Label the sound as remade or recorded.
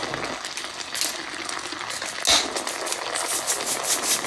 recorded